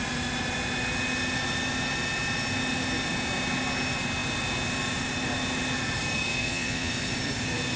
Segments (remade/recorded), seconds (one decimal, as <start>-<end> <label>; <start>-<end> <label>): 0.0-6.3 recorded; 6.3-6.9 remade; 6.9-7.8 recorded